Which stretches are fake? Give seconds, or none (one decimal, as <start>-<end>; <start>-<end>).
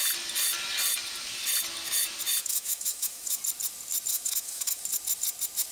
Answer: 2.4-3.4; 4.1-4.8